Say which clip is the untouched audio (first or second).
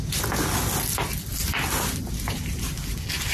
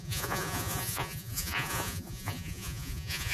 first